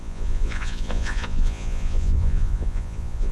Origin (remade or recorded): remade